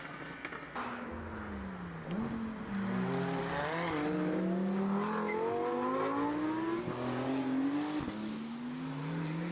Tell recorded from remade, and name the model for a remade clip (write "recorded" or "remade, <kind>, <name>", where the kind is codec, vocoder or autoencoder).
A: recorded